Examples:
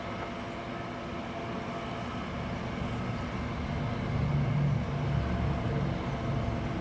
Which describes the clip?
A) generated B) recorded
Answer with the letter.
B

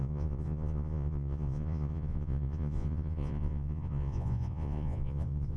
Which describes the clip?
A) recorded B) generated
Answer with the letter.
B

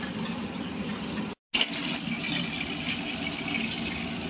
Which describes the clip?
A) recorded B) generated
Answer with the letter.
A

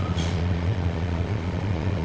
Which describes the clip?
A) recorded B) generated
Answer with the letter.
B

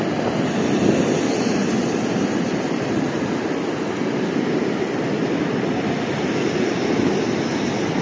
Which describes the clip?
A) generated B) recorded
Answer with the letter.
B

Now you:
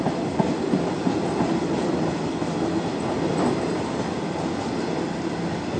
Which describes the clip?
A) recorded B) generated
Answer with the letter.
A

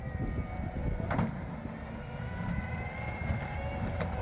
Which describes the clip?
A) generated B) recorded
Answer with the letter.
B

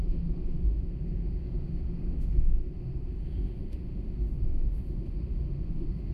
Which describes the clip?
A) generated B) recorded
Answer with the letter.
A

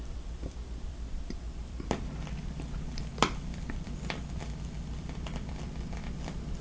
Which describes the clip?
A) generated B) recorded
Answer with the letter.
A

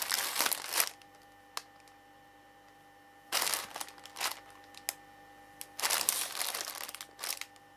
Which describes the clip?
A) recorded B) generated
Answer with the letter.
A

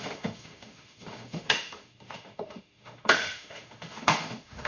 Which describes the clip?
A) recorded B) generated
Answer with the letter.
B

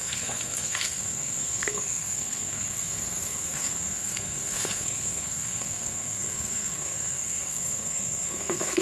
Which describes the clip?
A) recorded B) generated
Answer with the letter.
B